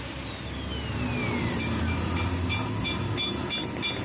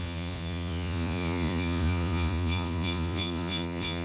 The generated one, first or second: second